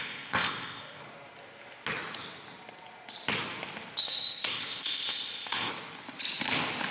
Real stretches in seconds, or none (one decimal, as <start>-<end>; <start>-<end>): 1.0-4.0; 5.7-6.9